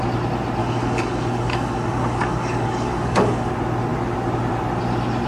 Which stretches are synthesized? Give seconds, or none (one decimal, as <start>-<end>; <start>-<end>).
0.6-3.5